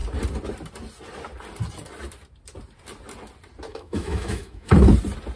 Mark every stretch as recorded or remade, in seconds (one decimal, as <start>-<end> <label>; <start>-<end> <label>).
0.0-3.7 recorded; 3.7-4.7 remade; 4.7-5.4 recorded